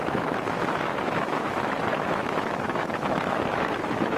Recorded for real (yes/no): no